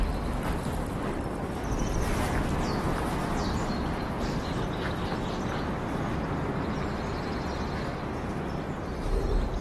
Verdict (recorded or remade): recorded